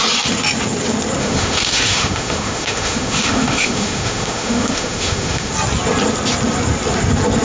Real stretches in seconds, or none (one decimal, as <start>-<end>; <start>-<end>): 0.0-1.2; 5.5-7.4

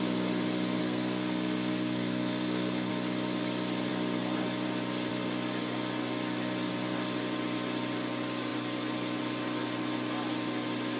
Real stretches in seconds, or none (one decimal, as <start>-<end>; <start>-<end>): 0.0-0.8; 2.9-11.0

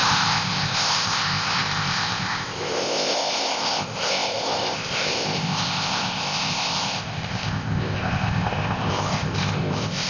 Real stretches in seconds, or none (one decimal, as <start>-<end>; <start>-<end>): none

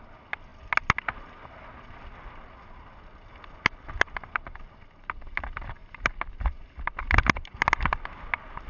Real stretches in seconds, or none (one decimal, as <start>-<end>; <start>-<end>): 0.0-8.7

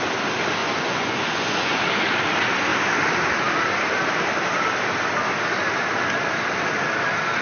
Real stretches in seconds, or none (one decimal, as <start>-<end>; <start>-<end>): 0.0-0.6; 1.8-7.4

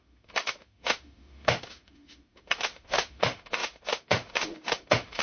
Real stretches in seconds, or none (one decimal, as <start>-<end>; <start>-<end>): none

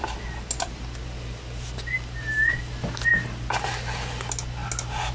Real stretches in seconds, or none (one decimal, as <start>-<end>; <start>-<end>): 0.0-5.1